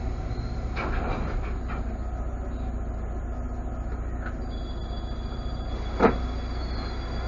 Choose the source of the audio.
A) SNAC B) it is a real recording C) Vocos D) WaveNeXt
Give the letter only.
B